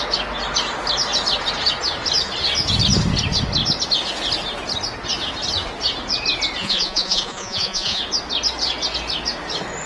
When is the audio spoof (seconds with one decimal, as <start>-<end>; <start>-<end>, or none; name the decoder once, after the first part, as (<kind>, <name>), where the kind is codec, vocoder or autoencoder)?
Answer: 6.6-8.0 (vocoder, Vocos)